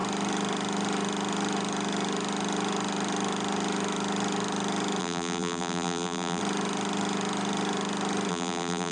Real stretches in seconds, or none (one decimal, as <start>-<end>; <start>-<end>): 0.0-5.0; 6.4-8.3